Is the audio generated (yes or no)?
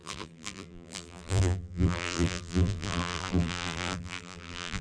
yes